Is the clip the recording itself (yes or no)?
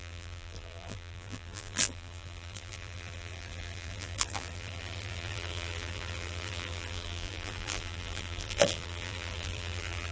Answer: no